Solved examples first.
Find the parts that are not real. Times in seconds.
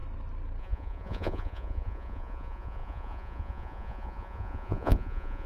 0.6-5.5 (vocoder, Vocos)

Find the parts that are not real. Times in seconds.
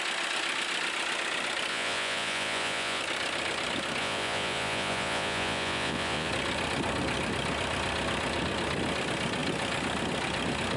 1.7-3.0 (vocoder, Vocos); 4.0-6.3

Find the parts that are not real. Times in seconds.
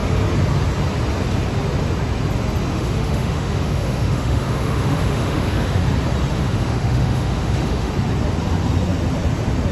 2.7-5.8 (autoencoder, DAC-VAE); 6.3-7.9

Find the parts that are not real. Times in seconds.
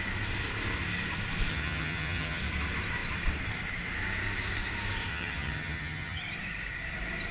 1.5-2.4 (vocoder, HiFi-GAN); 5.1-6.2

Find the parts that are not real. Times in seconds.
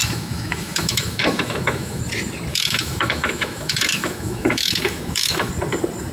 0.0-2.0 (autoencoder, DAC-VAE); 2.5-5.5